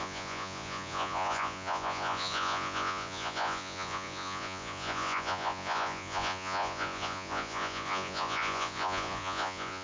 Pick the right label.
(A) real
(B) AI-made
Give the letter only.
B